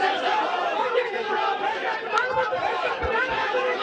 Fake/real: fake